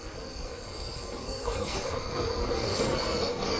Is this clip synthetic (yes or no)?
yes